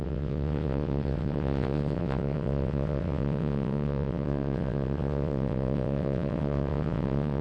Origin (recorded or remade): remade